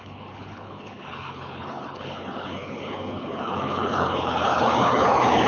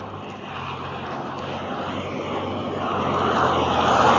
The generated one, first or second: first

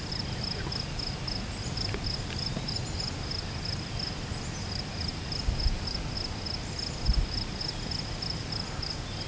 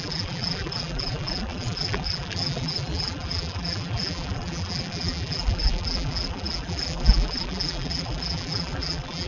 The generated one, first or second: second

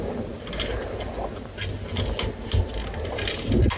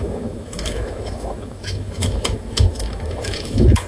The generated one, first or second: second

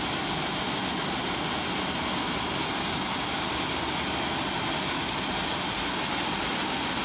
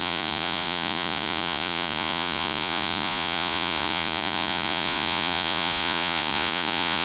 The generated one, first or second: second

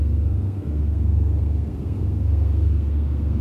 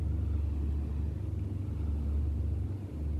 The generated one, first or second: first